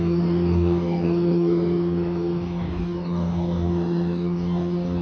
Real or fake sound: fake